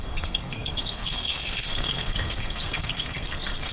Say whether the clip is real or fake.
fake